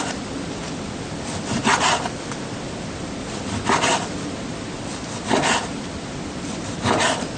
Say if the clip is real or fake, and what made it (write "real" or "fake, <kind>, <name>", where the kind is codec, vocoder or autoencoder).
real